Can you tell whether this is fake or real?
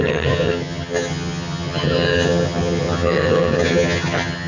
fake